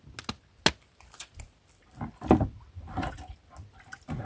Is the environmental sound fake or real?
real